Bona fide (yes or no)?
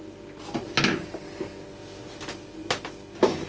yes